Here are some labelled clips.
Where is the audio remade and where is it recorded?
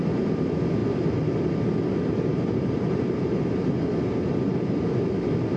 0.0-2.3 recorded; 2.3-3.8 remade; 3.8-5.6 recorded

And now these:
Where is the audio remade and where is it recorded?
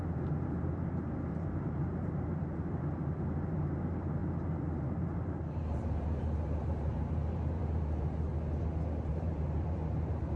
0.0-8.3 remade; 8.3-9.1 recorded; 9.1-10.4 remade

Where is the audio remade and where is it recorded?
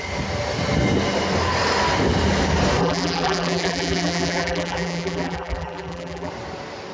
0.0-2.8 recorded; 2.8-6.3 remade; 6.3-6.9 recorded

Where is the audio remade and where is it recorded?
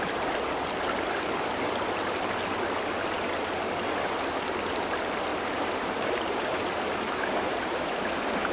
0.0-5.3 recorded; 5.3-8.0 remade; 8.0-8.5 recorded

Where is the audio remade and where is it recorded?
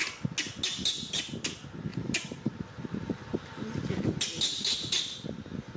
0.0-1.9 recorded; 1.9-2.5 remade; 2.5-5.8 recorded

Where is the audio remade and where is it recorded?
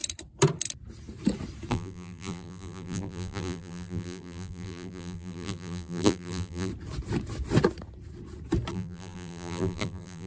0.0-1.7 recorded; 1.7-6.7 remade; 6.7-8.7 recorded; 8.7-10.3 remade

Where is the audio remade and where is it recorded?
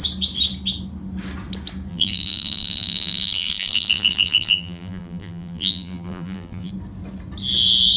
0.0-1.9 recorded; 1.9-6.7 remade; 6.7-8.0 recorded